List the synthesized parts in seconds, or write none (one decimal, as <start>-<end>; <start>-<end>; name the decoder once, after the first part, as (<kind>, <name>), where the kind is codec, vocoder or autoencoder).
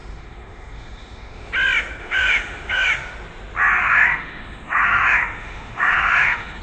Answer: 0.0-1.5 (autoencoder, DAC-VAE); 2.0-2.9; 3.8-6.6